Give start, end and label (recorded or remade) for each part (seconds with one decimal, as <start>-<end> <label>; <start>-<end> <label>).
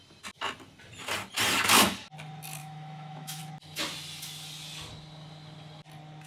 0.0-2.6 recorded; 2.6-3.4 remade; 3.4-6.3 recorded